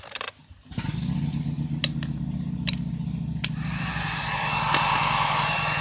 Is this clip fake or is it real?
real